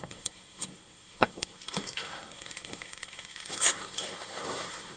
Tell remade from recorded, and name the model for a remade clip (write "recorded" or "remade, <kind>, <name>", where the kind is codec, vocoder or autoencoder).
remade, codec, SNAC